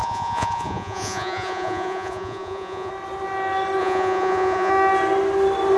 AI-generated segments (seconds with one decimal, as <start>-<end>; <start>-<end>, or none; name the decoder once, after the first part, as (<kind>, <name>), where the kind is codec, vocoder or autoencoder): 0.0-2.9 (vocoder, Vocos); 3.8-4.7